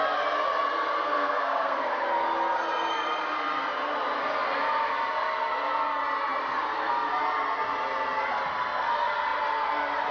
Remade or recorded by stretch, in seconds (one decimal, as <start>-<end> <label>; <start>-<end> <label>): 0.0-0.9 recorded; 0.9-1.9 remade; 1.9-10.1 recorded